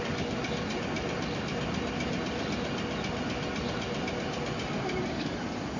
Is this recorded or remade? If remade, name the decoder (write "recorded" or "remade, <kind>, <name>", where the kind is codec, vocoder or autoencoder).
recorded